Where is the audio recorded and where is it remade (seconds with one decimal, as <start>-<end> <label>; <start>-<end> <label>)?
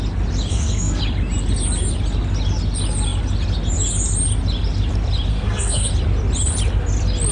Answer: 0.0-0.5 recorded; 0.5-1.0 remade; 1.0-5.3 recorded; 5.3-5.9 remade; 5.9-7.3 recorded